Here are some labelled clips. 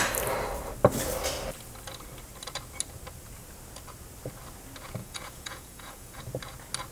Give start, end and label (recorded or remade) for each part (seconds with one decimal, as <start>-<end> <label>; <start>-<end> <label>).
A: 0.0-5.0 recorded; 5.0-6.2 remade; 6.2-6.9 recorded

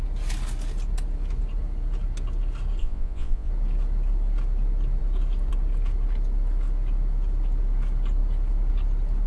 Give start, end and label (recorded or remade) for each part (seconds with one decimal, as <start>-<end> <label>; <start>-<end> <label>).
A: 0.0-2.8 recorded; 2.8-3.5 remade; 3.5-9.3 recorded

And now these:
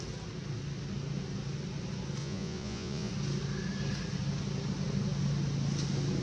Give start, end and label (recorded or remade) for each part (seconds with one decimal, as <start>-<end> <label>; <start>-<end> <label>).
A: 0.0-2.2 recorded; 2.2-3.1 remade; 3.1-6.2 recorded

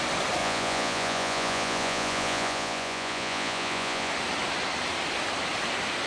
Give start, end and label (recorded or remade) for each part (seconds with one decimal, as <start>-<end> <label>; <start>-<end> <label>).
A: 0.0-0.4 recorded; 0.4-4.1 remade; 4.1-6.1 recorded

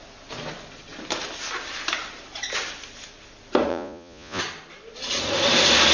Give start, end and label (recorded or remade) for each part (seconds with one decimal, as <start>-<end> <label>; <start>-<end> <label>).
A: 0.0-3.7 recorded; 3.7-4.4 remade; 4.4-5.9 recorded

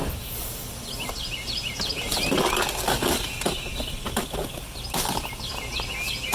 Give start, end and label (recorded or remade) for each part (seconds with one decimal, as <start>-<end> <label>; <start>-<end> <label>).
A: 0.0-6.3 recorded

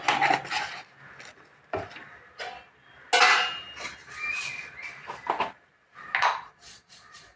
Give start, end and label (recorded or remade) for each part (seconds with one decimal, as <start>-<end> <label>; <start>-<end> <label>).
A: 0.0-6.3 recorded; 6.3-7.4 remade

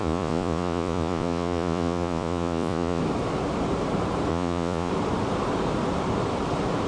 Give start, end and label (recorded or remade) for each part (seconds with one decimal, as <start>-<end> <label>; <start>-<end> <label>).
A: 0.0-3.0 remade; 3.0-4.3 recorded; 4.3-4.9 remade; 4.9-6.9 recorded